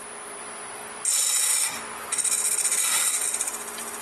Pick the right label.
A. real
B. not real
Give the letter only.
A